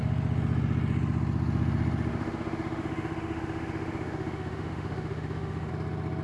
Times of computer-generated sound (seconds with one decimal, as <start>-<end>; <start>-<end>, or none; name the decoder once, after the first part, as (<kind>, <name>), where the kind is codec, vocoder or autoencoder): 2.1-5.7 (autoencoder, DAC-VAE)